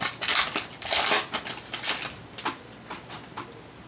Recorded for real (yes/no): yes